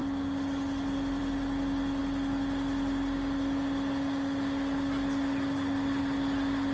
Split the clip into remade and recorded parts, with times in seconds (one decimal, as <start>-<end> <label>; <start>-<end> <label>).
0.0-6.7 recorded